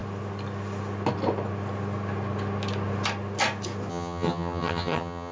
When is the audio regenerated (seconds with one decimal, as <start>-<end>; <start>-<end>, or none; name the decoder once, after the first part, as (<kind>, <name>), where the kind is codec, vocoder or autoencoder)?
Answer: 3.9-5.3 (vocoder, HiFi-GAN)